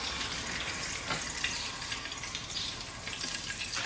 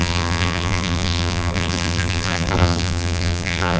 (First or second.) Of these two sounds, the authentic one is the first